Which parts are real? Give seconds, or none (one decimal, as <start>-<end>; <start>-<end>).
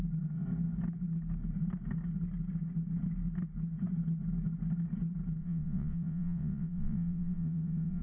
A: 0.0-5.4